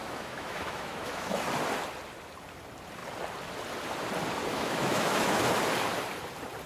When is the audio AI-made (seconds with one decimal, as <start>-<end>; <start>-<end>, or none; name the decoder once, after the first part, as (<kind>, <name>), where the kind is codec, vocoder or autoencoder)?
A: 0.0-1.4 (autoencoder, DAC-VAE); 4.5-5.4